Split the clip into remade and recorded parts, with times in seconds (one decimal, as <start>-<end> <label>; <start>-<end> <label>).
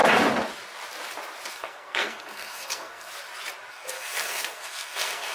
0.0-1.5 recorded; 1.5-3.1 remade; 3.1-3.7 recorded; 3.7-5.3 remade